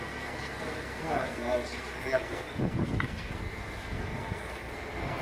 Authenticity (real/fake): fake